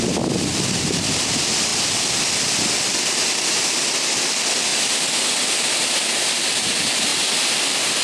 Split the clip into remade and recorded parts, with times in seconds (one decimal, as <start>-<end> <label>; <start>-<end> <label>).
0.0-8.0 recorded